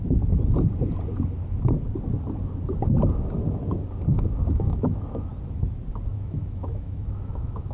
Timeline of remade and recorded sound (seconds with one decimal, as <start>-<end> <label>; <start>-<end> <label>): 0.0-4.1 recorded; 4.1-5.3 remade; 5.3-6.1 recorded; 6.1-7.7 remade